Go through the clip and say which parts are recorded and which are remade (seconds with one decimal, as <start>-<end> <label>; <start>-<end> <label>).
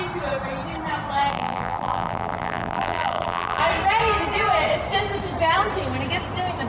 0.0-1.3 recorded; 1.3-3.6 remade; 3.6-6.7 recorded